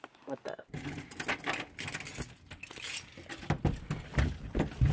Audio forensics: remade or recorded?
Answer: recorded